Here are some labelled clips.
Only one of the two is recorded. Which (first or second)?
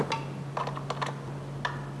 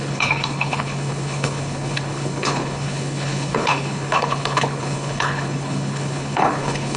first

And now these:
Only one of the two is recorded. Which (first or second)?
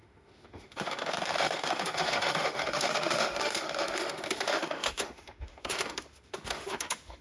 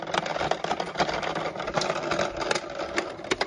second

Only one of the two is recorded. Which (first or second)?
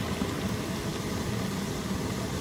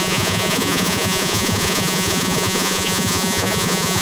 first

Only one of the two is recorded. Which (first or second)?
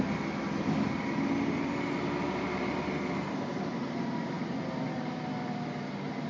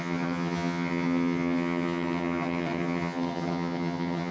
first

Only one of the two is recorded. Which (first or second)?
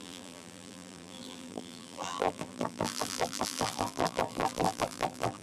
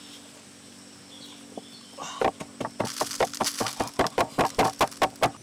second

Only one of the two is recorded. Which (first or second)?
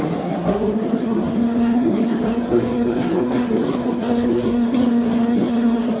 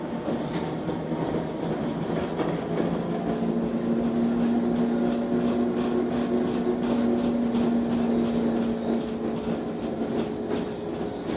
second